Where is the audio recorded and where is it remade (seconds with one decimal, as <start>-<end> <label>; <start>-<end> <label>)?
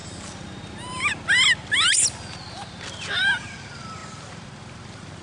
0.0-5.2 recorded